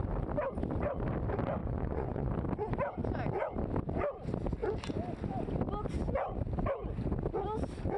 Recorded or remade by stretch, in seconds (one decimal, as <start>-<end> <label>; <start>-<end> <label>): 0.0-1.6 recorded; 1.6-2.3 remade; 2.3-8.0 recorded